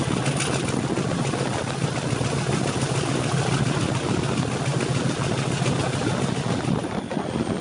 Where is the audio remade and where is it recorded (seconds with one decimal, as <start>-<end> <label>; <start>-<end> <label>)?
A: 0.0-7.6 recorded